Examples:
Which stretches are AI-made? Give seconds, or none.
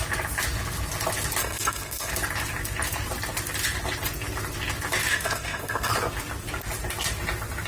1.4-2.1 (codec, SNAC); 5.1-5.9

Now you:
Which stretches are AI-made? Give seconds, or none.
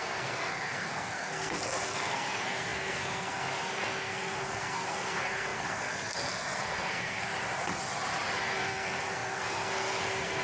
0.0-7.3 (codec, SNAC); 8.4-10.4